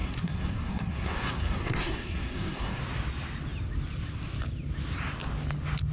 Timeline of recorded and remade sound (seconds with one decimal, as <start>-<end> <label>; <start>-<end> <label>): 0.0-2.8 remade; 2.8-5.9 recorded